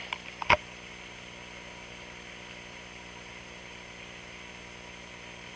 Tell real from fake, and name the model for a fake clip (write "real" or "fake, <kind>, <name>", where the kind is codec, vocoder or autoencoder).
real